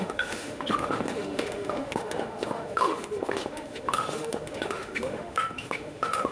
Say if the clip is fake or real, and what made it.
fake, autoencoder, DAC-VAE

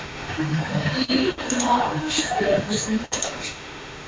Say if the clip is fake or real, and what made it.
fake, autoencoder, DAC-VAE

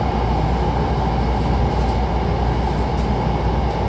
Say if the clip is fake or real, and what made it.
real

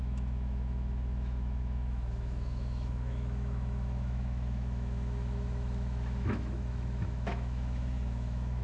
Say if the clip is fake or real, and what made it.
fake, autoencoder, DAC-VAE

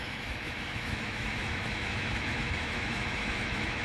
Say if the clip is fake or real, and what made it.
fake, autoencoder, DAC-VAE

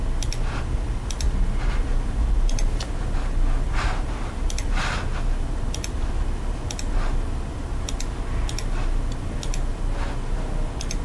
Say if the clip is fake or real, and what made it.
real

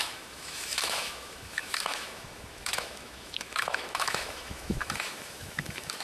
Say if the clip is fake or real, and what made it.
fake, autoencoder, DAC-VAE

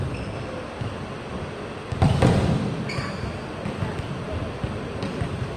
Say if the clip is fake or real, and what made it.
real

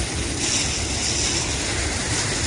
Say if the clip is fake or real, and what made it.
real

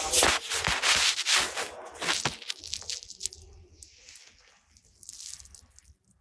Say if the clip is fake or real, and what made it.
real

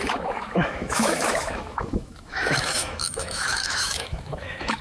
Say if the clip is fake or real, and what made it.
fake, autoencoder, DAC-VAE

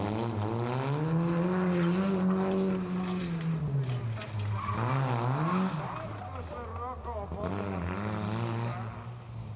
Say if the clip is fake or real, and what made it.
real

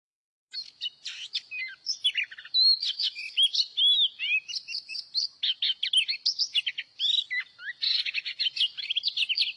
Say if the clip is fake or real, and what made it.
real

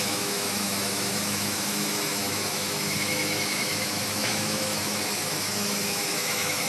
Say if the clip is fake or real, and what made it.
fake, autoencoder, DAC-VAE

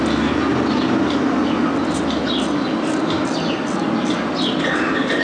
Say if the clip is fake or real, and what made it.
real